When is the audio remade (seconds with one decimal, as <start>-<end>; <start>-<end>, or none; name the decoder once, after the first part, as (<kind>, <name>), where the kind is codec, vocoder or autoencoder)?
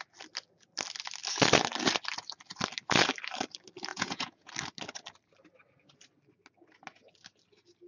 3.9-4.5 (vocoder, Vocos)